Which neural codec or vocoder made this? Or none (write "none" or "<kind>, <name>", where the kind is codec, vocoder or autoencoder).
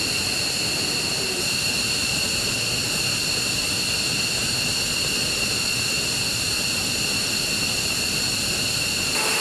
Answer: none